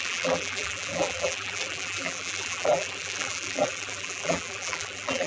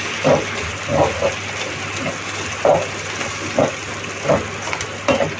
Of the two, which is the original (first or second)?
second